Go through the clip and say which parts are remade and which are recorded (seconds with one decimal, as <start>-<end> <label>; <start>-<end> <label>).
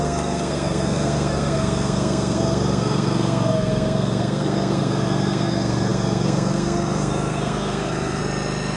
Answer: 0.0-8.2 remade; 8.2-8.8 recorded